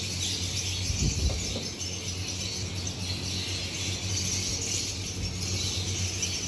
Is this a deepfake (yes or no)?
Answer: no